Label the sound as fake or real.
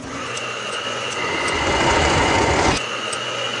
fake